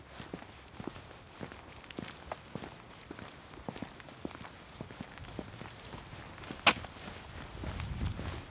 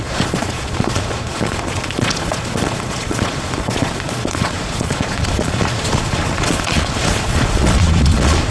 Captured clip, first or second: first